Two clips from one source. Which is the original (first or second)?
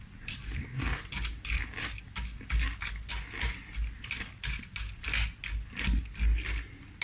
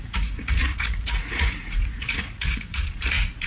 first